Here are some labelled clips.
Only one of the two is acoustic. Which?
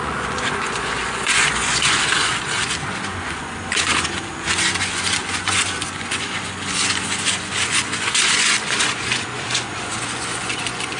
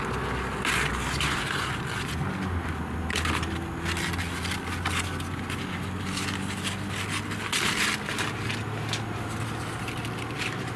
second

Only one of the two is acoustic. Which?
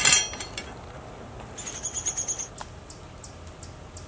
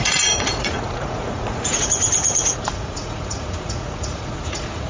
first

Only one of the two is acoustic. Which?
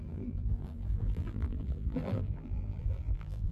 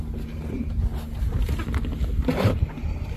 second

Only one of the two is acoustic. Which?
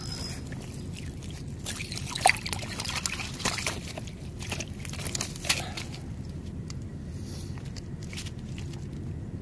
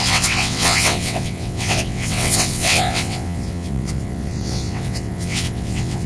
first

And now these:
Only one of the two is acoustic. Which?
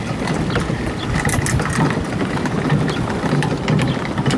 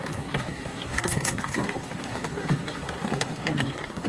first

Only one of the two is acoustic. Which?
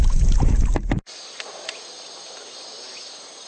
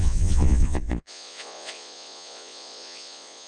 first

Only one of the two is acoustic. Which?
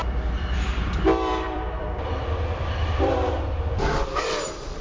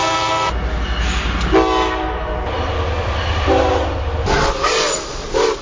second